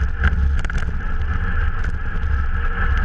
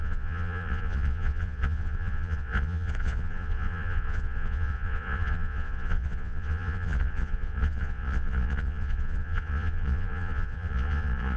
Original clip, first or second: first